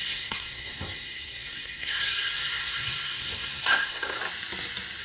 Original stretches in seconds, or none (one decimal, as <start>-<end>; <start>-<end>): 4.2-5.0